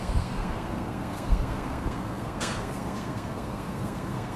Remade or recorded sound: remade